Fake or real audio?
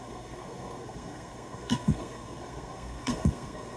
fake